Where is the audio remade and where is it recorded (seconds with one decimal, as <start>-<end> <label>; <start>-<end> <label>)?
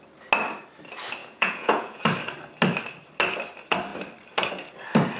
0.0-1.2 recorded; 1.2-2.0 remade; 2.0-5.2 recorded